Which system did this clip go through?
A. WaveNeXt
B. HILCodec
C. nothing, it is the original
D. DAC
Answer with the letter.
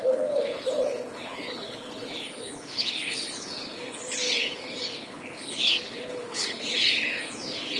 B